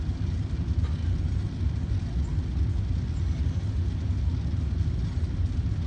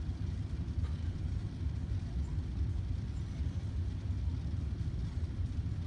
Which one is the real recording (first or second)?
first